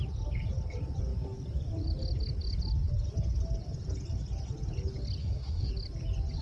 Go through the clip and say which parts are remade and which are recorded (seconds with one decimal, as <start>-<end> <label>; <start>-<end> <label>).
0.0-5.2 recorded; 5.2-5.7 remade; 5.7-6.4 recorded